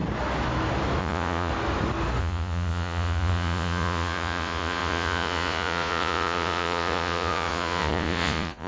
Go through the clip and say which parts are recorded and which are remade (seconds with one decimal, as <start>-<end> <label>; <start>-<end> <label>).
0.0-1.0 recorded; 1.0-1.5 remade; 1.5-2.2 recorded; 2.2-8.7 remade